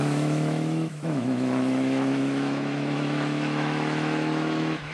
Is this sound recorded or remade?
remade